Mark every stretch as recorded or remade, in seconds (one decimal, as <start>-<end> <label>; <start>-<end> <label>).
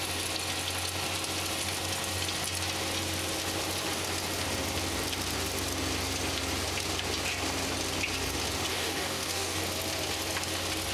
0.0-8.7 recorded; 8.7-9.6 remade; 9.6-10.9 recorded